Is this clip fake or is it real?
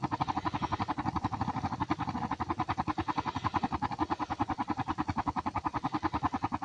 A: real